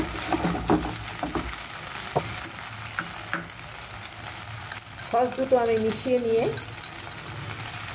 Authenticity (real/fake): real